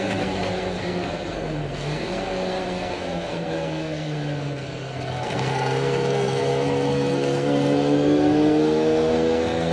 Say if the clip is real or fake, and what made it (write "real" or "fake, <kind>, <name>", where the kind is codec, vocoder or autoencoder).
fake, codec, SNAC